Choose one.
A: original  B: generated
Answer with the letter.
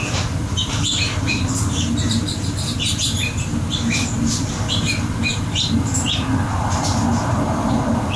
B